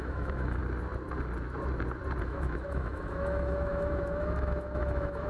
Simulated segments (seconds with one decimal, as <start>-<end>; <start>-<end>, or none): 0.0-0.6; 2.2-5.3